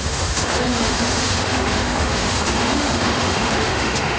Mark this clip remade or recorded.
remade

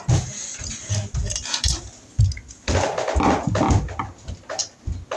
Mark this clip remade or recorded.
recorded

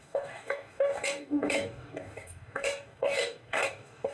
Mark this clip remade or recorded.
remade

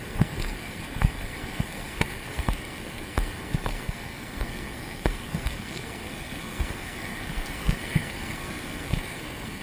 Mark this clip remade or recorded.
remade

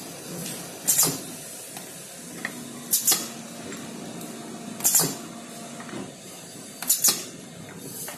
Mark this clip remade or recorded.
recorded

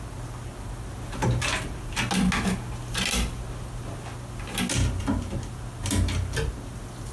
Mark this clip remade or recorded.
recorded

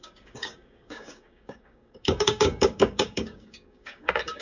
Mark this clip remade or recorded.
remade